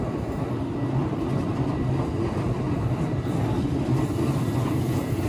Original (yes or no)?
yes